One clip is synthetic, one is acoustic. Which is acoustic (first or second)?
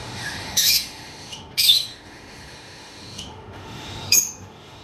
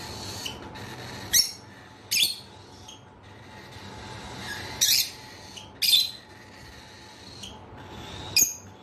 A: second